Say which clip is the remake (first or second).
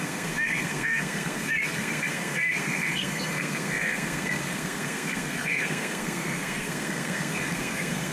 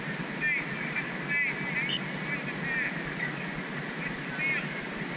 first